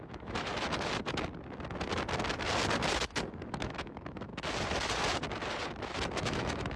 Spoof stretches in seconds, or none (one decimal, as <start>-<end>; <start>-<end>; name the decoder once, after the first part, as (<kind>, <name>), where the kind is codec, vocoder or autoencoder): 0.0-0.5 (autoencoder, DAC-VAE); 3.5-4.3; 6.2-6.8